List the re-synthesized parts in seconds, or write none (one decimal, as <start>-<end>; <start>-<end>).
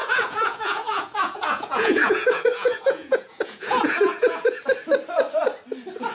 0.0-4.6